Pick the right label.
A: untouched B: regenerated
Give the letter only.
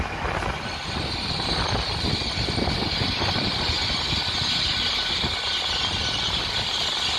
A